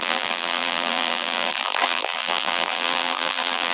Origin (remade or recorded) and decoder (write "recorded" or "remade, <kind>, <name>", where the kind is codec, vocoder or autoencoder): remade, vocoder, BigVGAN v2